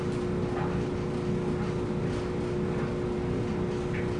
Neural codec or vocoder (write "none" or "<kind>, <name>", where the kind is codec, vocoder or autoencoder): none